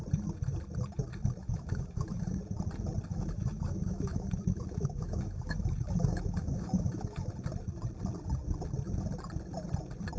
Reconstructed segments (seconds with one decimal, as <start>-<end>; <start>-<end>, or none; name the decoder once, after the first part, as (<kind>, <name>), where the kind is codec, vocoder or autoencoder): 1.4-2.4 (autoencoder, DAC-VAE); 3.1-7.3